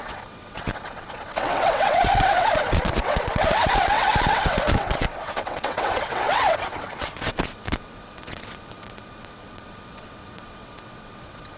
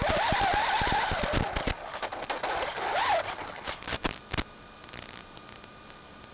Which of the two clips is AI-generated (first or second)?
first